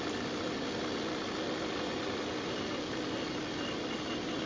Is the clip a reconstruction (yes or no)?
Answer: no